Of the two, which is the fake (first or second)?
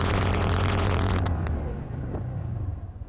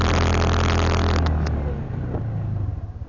first